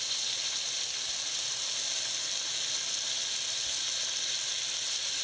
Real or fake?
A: real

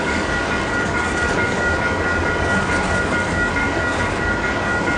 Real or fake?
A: fake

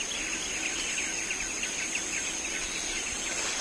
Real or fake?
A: real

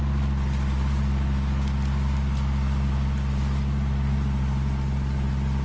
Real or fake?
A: real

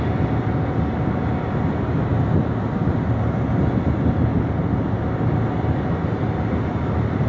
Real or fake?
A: real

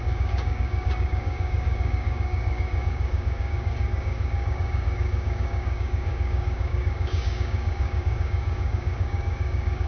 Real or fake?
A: fake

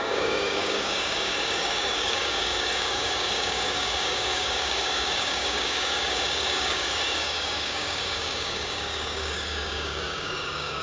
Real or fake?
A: fake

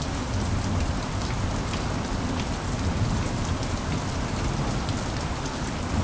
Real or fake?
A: real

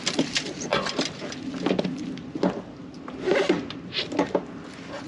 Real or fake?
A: real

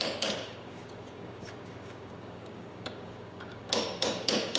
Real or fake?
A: fake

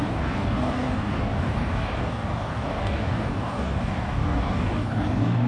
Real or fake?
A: fake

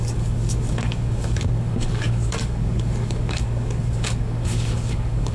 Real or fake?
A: fake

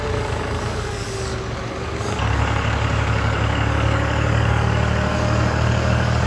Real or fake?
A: fake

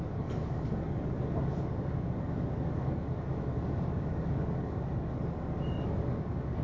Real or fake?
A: fake